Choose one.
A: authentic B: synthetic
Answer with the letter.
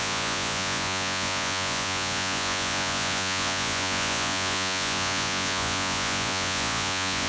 B